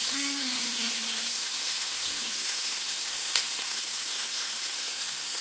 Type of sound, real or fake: fake